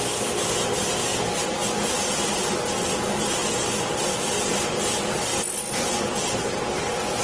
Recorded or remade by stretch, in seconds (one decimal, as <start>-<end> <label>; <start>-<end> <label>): 0.0-7.2 recorded